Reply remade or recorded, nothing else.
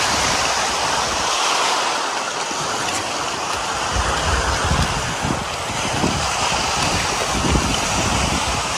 recorded